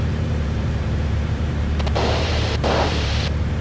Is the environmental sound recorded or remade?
remade